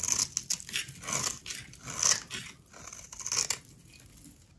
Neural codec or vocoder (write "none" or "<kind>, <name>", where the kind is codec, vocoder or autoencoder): none